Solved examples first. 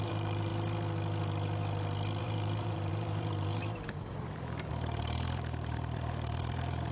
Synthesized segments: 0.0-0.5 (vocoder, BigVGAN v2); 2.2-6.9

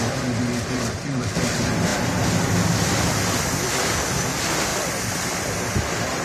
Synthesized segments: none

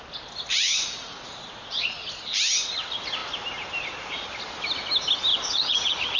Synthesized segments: 0.5-1.5 (vocoder, Vocos); 5.3-6.2